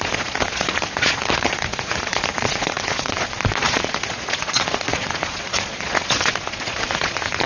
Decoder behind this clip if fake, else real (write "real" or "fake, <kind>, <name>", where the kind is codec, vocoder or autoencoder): fake, vocoder, Vocos